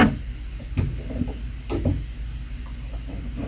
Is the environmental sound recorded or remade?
recorded